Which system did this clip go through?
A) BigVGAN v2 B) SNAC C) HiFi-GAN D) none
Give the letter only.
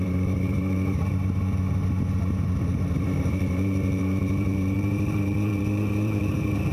A